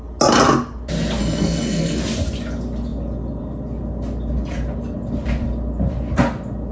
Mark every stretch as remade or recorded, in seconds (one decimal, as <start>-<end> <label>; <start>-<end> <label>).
0.0-1.2 recorded; 1.2-2.0 remade; 2.0-6.7 recorded